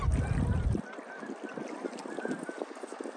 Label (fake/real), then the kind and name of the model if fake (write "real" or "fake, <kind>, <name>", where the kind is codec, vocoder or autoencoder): real